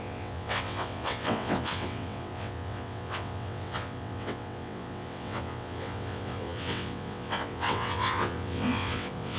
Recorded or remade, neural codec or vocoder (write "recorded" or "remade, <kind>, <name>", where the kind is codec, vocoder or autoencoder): remade, vocoder, WaveNeXt